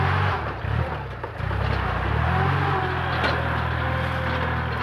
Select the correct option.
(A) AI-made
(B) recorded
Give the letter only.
B